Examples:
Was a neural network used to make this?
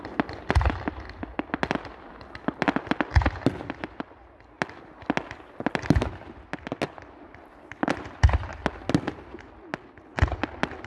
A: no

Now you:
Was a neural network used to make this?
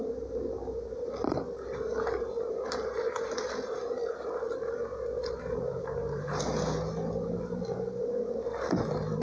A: no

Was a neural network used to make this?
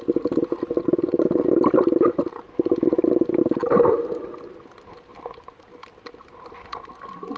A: no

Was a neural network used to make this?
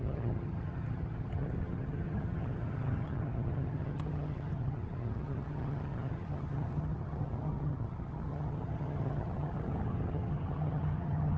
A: yes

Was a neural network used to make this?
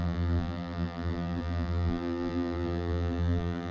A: yes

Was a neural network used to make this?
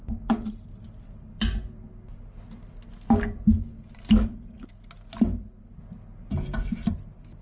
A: no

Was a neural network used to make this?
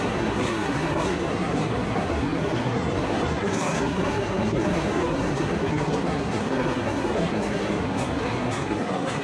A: yes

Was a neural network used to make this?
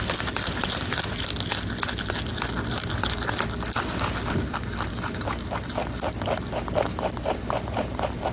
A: no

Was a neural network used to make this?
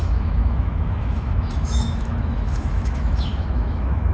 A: yes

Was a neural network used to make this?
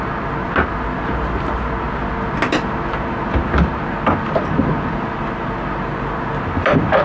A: no